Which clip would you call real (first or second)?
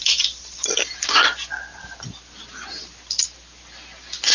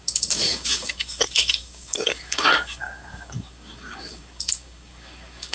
first